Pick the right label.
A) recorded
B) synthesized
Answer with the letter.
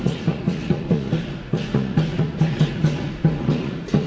B